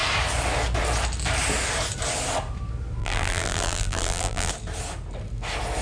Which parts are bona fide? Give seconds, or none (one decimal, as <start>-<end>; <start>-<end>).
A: 0.0-3.0; 4.5-5.8